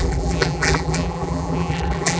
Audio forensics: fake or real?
fake